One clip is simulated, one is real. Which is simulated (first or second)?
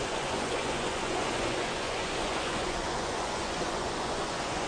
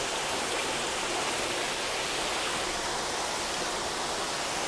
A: first